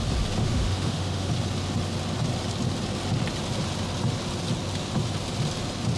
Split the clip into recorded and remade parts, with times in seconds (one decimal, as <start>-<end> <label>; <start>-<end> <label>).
0.0-0.4 recorded; 0.4-1.3 remade; 1.3-6.0 recorded